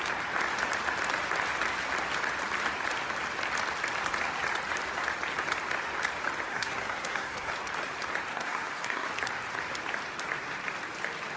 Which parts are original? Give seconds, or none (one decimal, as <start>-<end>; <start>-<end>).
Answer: 0.0-6.5; 7.5-8.3; 9.1-11.4